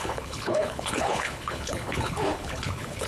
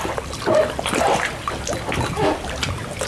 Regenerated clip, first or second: first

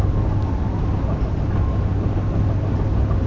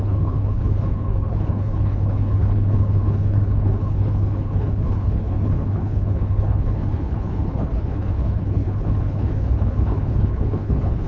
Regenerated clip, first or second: second